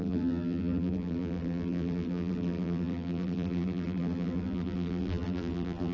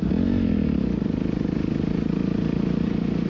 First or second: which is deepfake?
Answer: first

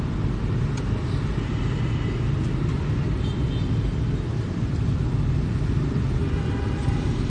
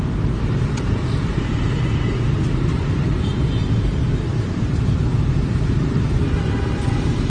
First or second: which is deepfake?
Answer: second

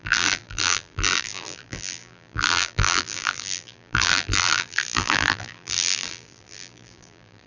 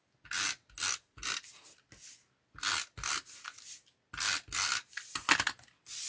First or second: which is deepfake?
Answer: first